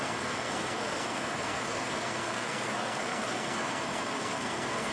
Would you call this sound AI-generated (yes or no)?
yes